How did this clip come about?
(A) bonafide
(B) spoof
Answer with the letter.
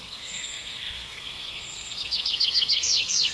B